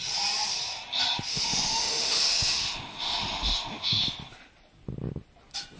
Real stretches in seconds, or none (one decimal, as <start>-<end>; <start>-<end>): 0.0-1.3; 4.0-5.8